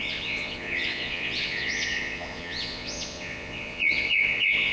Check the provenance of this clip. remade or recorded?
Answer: remade